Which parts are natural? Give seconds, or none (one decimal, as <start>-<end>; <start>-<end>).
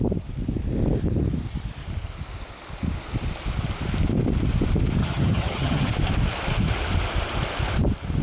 0.0-5.0; 5.9-8.2